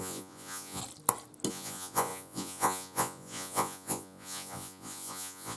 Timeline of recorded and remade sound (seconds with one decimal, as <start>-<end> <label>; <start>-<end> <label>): 0.0-0.8 remade; 0.8-1.5 recorded; 1.5-5.6 remade